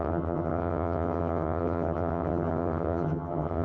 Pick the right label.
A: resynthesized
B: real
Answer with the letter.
A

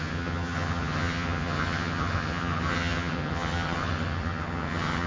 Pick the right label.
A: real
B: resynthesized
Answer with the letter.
B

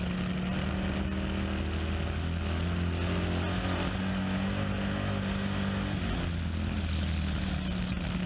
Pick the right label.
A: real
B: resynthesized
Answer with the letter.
A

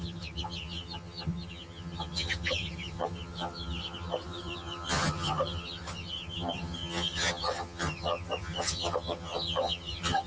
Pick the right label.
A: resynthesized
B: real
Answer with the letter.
A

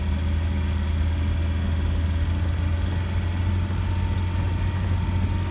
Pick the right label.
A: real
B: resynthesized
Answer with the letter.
A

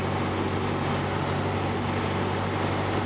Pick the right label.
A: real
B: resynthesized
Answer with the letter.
A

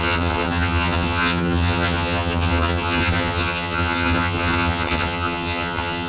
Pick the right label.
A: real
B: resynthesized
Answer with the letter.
B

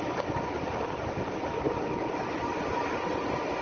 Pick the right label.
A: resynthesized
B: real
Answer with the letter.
B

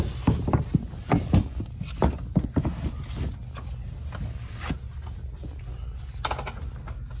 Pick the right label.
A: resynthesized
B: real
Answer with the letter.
B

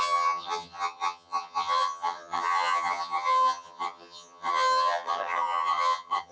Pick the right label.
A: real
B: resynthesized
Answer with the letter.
B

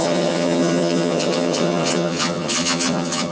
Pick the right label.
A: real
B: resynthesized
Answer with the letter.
B